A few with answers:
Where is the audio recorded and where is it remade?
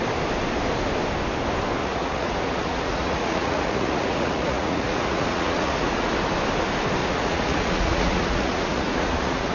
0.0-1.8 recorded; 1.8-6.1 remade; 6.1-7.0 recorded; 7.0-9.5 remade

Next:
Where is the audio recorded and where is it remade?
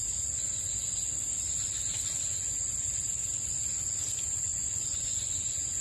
0.0-4.5 recorded; 4.5-5.3 remade; 5.3-5.8 recorded